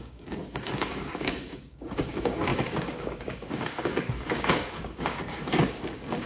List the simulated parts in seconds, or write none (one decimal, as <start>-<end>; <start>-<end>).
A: 0.0-6.3

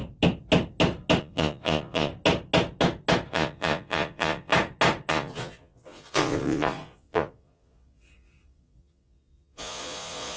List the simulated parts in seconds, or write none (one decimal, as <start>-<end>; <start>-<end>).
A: 1.2-2.1; 3.3-4.5; 5.1-10.4

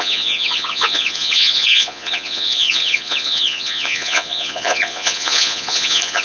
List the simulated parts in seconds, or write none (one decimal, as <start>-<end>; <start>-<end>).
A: 0.0-6.2

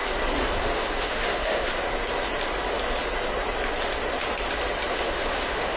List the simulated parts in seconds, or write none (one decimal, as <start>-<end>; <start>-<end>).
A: 0.6-1.7; 4.9-5.8